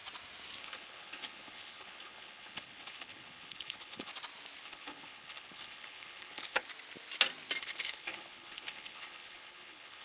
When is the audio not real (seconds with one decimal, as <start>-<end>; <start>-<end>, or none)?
0.6-4.1; 4.6-6.6; 7.6-10.0